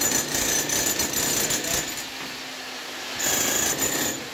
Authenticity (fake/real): real